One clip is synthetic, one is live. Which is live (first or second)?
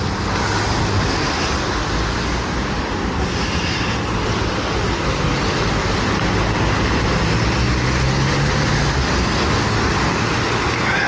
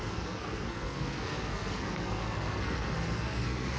first